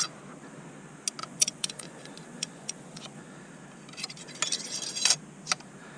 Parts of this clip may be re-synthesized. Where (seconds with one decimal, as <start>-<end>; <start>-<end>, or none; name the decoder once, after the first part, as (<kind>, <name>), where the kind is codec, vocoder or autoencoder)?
1.2-3.2 (vocoder, Vocos)